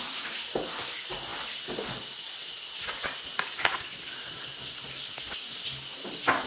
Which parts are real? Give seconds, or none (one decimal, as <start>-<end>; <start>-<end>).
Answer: 0.0-6.5